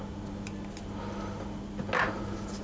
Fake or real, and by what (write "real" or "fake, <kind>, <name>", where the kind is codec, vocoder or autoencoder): real